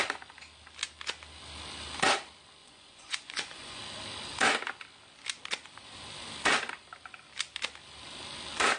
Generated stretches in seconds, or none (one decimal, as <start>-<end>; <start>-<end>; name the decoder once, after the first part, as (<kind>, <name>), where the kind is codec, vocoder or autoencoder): 2.6-3.8 (vocoder, Vocos)